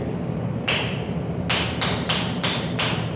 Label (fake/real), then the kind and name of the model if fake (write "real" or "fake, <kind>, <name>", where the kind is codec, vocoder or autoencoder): real